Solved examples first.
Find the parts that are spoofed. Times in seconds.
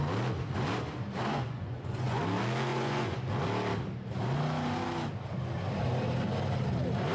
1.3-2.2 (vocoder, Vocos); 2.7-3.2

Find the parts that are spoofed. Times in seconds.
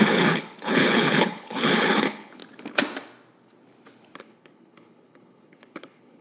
0.0-2.4 (codec, HILCodec); 4.2-6.2